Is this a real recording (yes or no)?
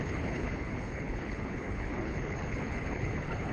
no